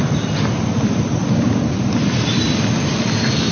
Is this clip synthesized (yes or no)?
no